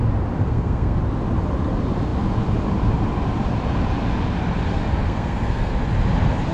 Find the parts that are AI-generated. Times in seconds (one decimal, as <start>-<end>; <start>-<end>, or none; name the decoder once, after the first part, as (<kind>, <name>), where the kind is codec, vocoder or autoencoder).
0.4-1.0 (codec, SNAC); 5.0-5.7